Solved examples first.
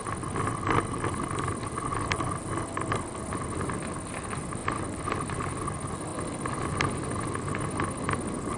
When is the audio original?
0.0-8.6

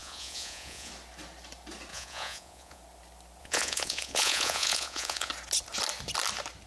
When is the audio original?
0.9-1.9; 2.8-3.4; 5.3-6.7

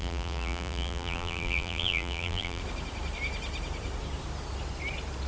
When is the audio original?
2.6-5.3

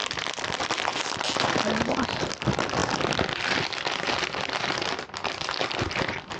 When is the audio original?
0.0-0.5; 0.9-2.3; 2.8-5.6

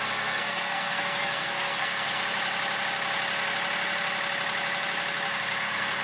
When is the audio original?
2.2-5.6

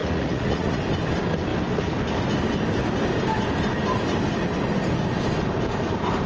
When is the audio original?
0.8-6.3